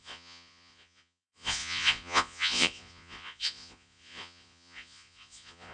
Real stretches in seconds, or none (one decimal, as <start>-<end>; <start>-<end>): none